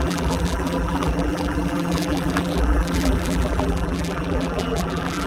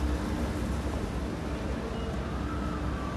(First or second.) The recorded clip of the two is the second